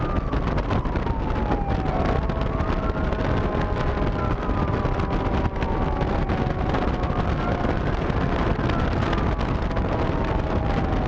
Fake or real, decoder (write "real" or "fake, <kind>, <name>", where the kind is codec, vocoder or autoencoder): real